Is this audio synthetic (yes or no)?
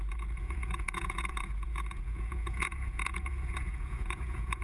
yes